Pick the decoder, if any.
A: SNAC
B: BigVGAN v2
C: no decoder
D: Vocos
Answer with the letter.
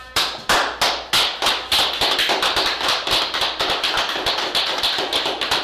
C